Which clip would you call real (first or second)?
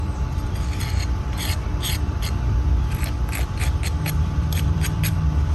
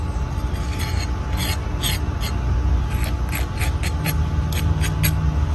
second